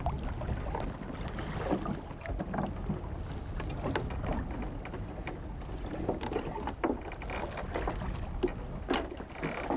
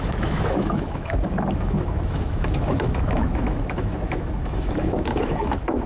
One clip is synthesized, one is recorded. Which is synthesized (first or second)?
second